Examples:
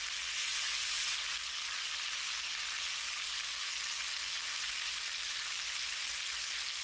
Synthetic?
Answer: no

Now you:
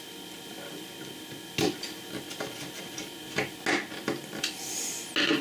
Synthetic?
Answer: no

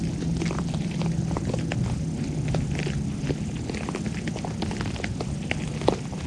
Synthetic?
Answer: no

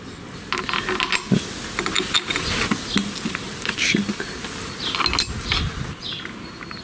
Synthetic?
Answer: no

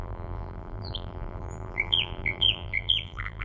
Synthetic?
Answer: yes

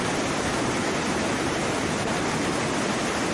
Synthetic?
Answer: no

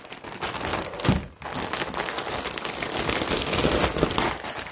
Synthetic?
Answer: no